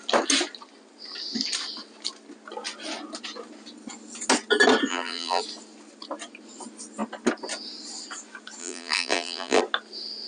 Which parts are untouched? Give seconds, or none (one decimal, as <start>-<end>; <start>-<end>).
0.0-4.9; 5.4-8.6; 9.6-10.3